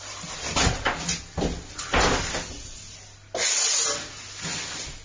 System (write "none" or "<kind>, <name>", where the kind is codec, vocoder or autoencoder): none